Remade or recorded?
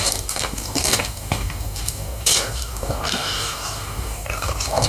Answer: remade